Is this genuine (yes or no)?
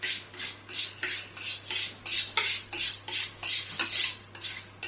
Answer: yes